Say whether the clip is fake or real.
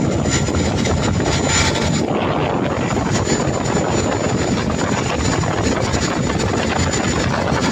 real